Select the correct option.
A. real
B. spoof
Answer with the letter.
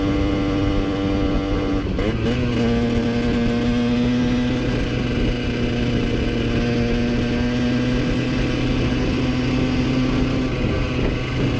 A